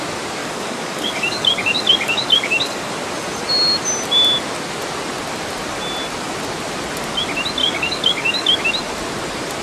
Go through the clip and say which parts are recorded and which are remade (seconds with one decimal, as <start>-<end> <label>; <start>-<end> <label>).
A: 0.0-0.4 recorded; 0.4-2.9 remade; 2.9-7.6 recorded; 7.6-8.6 remade; 8.6-9.6 recorded